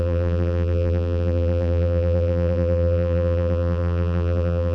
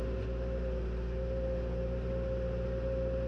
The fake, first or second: first